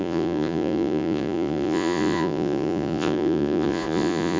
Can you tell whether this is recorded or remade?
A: remade